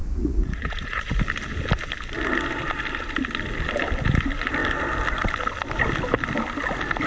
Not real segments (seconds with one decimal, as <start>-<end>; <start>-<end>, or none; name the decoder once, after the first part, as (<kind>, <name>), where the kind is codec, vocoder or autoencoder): 0.0-1.2 (vocoder, Vocos)